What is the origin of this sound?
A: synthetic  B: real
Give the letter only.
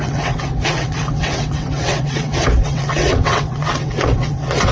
A